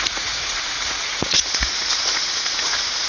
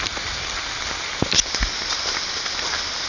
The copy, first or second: first